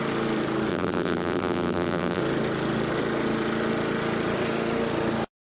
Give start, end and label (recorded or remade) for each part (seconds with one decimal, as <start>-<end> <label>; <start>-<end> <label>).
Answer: 0.0-0.7 recorded; 0.7-2.2 remade; 2.2-5.4 recorded